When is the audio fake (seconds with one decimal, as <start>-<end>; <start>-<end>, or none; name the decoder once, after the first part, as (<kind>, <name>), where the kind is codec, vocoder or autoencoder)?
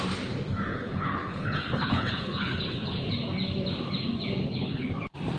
0.7-3.1 (codec, HILCodec); 4.4-4.9